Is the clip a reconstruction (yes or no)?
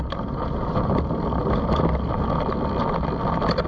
no